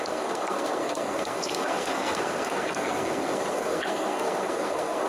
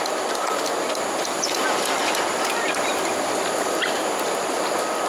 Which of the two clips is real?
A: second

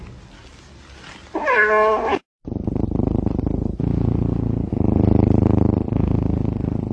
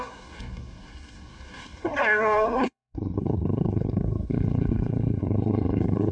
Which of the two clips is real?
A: first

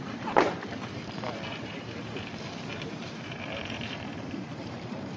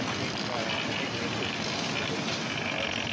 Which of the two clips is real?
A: second